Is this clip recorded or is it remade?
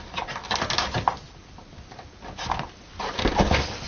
recorded